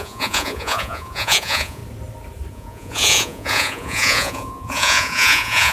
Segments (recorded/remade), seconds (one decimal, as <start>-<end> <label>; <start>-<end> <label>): 0.0-1.8 remade; 1.8-2.5 recorded; 2.5-5.7 remade